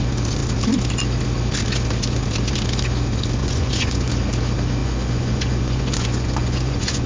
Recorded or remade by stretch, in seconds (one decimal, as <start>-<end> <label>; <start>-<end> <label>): 0.0-3.4 recorded; 3.4-4.1 remade; 4.1-4.8 recorded; 4.8-7.1 remade